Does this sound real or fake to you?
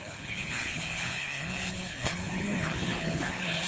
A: fake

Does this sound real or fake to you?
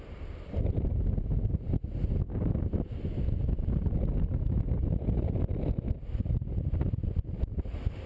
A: real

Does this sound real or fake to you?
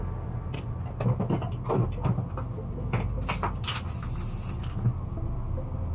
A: real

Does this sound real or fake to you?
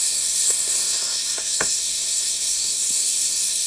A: fake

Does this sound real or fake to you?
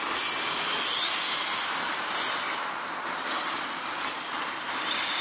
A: real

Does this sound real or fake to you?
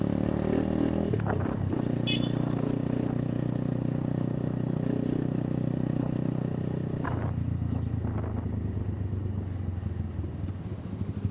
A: real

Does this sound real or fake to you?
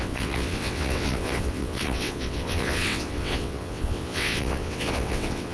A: fake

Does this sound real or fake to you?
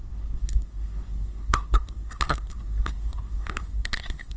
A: fake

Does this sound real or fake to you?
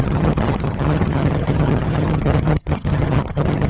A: fake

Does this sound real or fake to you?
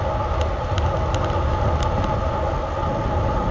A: real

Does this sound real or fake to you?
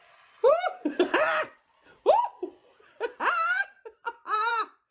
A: fake